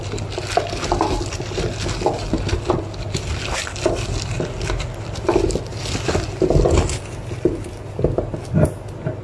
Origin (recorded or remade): recorded